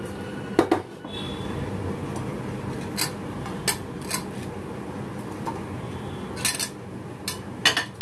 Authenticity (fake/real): real